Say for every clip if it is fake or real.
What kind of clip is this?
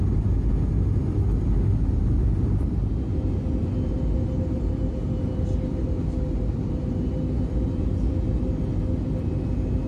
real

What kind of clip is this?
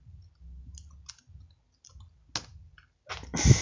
real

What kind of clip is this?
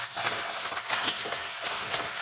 fake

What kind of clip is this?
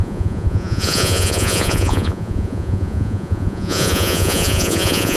fake